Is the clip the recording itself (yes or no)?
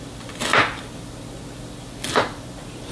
yes